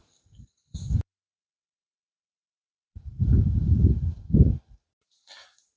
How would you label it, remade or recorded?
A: remade